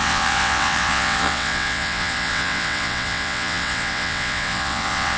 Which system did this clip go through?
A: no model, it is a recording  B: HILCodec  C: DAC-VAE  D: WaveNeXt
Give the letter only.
D